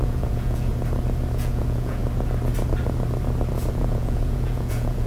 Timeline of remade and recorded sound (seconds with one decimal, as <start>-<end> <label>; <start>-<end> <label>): 0.0-0.7 remade; 0.7-1.4 recorded; 1.4-2.0 remade; 2.0-3.7 recorded; 3.7-5.1 remade